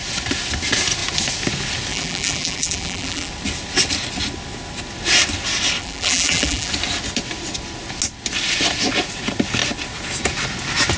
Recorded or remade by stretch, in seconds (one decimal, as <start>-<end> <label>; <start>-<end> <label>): 0.0-1.9 recorded; 1.9-3.3 remade; 3.3-5.8 recorded; 5.8-6.7 remade; 6.7-11.0 recorded